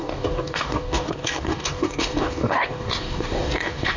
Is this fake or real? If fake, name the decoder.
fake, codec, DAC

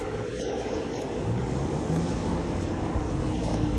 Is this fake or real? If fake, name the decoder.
fake, codec, DAC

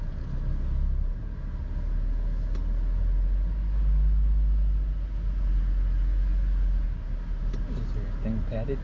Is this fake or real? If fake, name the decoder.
real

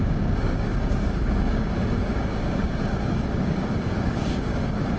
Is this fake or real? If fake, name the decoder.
fake, codec, DAC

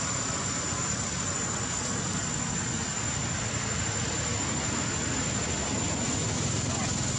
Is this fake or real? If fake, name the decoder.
real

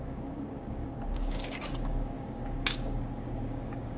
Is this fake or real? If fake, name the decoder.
fake, codec, DAC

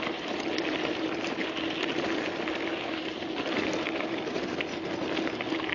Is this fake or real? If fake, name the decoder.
real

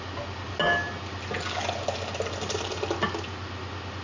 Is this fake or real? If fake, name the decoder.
real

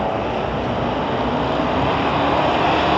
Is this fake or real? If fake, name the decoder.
real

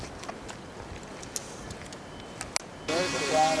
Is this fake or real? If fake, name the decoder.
real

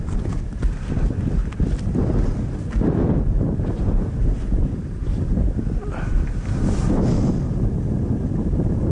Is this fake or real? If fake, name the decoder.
real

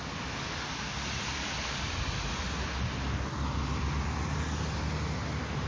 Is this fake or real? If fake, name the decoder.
real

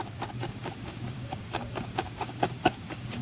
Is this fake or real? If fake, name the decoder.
fake, codec, DAC